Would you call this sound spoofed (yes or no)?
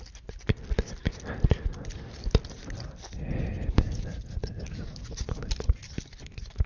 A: no